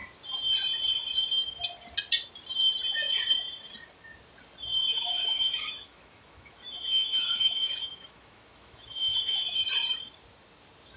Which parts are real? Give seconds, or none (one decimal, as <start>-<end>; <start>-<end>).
0.0-4.9; 9.6-11.0